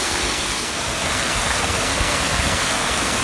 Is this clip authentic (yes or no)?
no